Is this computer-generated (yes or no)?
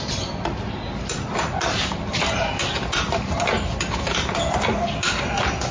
no